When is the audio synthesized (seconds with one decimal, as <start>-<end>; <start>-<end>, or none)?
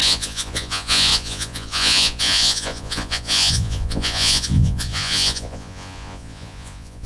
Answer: 0.0-7.1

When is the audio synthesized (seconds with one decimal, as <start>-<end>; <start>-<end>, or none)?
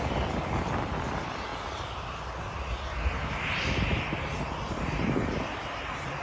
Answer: none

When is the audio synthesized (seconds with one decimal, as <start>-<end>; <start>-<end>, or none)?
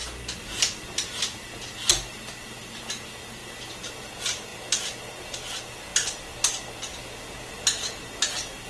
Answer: none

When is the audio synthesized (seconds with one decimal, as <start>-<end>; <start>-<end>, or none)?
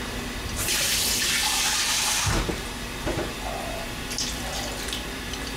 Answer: none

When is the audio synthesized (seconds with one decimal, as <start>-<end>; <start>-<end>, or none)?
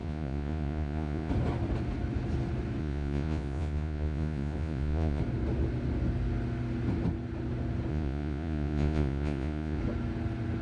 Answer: 0.0-1.3; 2.8-5.2; 7.9-9.8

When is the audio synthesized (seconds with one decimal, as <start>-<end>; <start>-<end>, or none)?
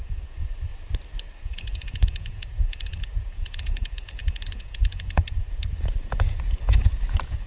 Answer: 0.0-0.7; 1.4-7.5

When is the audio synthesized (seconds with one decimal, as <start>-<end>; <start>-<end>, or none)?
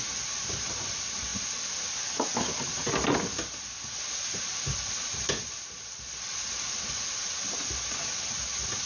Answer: none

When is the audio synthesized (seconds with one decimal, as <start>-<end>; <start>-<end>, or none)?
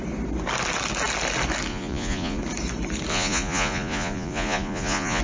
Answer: 1.7-2.4; 3.1-5.2